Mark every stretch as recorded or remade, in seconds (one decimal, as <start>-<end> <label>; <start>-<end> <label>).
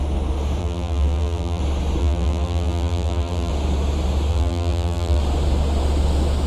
0.0-0.6 recorded; 0.6-1.6 remade; 1.6-2.0 recorded; 2.0-3.5 remade; 3.5-4.3 recorded; 4.3-5.2 remade; 5.2-6.5 recorded